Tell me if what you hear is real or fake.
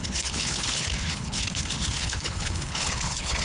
fake